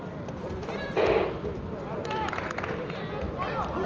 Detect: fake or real real